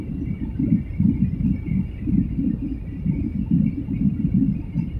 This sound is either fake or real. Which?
real